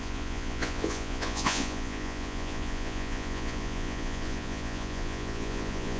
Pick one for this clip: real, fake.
fake